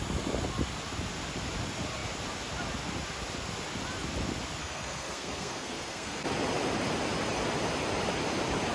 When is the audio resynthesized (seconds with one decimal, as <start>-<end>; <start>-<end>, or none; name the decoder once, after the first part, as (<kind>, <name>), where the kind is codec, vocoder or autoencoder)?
4.6-6.2 (codec, SNAC)